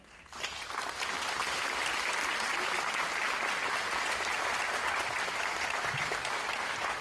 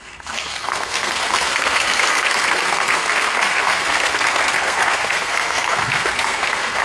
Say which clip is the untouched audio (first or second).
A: first